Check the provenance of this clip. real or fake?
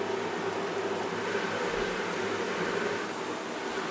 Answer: real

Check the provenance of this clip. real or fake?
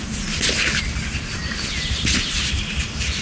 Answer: real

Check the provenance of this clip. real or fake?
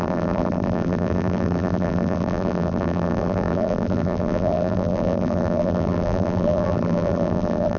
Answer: fake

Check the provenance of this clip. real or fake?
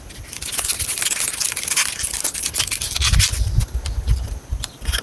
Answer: real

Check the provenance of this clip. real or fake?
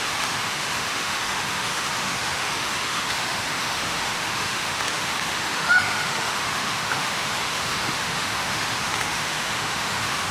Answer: fake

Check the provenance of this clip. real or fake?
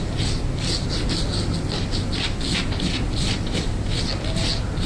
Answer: real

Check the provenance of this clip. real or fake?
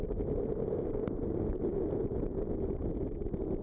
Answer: real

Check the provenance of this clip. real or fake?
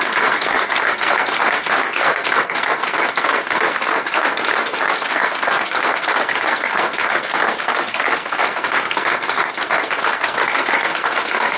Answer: fake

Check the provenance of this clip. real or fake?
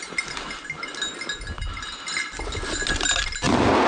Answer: real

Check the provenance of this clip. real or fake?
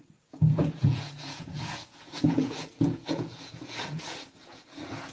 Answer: fake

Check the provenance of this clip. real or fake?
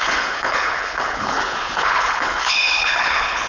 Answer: fake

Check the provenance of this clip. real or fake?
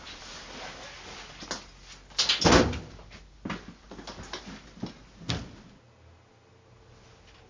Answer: real